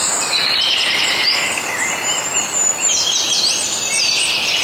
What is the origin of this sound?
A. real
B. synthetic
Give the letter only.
A